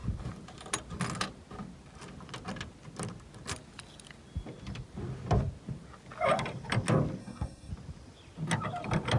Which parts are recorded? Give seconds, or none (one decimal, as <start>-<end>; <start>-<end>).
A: 0.0-7.2; 7.7-9.2